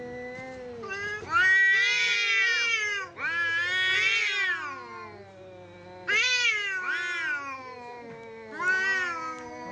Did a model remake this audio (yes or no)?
no